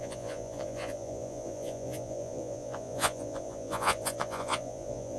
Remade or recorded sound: remade